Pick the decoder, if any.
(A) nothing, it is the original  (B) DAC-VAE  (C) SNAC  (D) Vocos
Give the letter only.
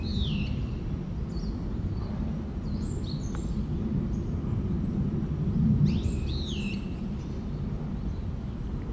A